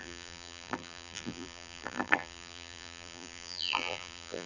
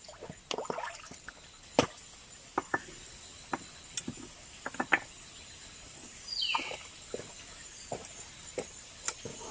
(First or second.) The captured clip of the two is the second